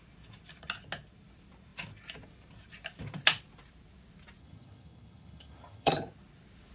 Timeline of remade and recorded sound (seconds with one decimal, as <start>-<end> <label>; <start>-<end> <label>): 0.0-4.4 recorded; 4.4-5.9 remade; 5.9-6.7 recorded